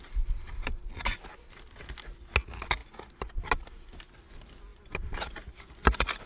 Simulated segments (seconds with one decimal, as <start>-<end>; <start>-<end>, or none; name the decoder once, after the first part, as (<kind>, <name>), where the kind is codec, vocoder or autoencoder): none